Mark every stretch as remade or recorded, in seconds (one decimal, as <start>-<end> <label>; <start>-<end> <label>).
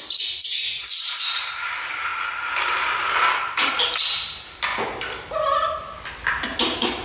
0.0-7.0 recorded